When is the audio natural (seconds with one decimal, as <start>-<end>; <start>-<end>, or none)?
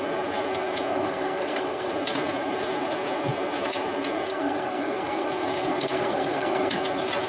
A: 0.0-0.9; 1.9-4.3; 5.3-5.7; 6.7-7.3